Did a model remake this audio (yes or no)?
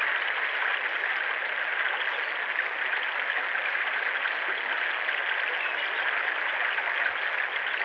no